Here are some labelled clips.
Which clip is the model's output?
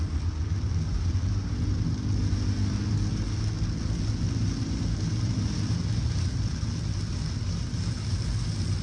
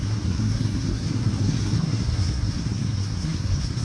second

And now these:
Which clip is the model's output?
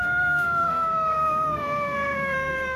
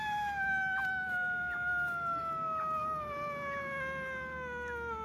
first